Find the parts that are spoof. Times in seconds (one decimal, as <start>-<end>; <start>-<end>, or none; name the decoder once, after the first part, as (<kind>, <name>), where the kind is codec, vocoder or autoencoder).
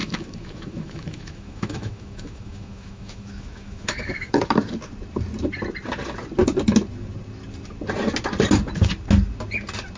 0.0-4.4 (autoencoder, DAC-VAE)